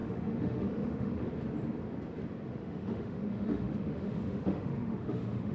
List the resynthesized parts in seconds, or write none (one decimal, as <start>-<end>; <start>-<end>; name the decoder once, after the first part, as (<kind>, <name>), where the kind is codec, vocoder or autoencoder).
0.0-1.2 (autoencoder, DAC-VAE); 2.5-5.5